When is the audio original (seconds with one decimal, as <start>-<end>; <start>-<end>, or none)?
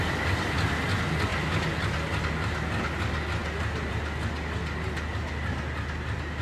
0.0-6.4